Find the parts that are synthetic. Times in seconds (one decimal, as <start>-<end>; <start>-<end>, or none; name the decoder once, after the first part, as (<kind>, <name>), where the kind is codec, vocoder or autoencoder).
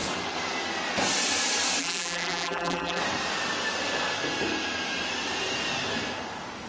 1.8-3.0 (vocoder, BigVGAN v2)